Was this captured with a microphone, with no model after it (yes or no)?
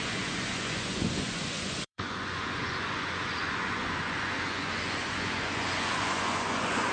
no